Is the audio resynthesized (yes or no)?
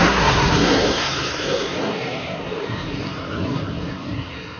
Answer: yes